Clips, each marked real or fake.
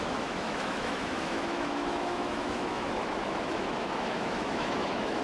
fake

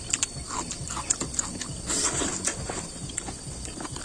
real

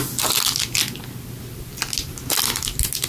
real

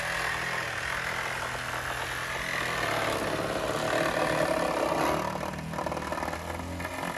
real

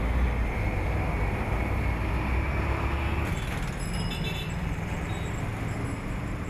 real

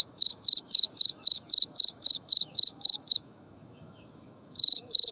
fake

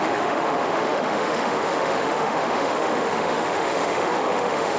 fake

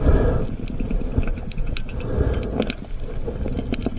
real